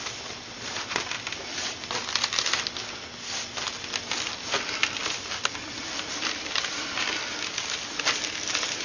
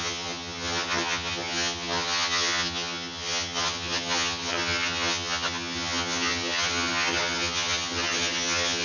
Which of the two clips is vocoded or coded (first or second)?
second